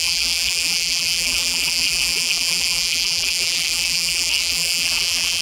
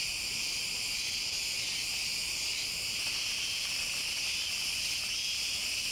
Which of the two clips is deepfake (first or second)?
first